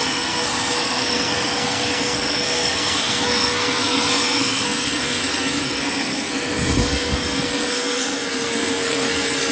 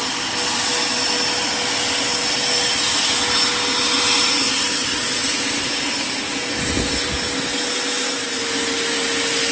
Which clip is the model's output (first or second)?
first